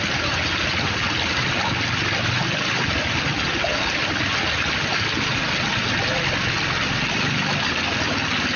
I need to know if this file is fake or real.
real